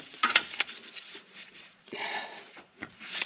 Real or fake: fake